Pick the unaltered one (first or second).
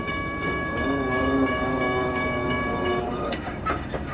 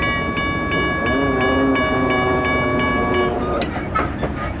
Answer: second